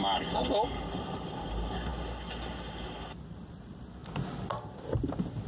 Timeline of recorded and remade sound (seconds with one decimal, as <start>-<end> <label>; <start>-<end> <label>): 0.0-5.5 recorded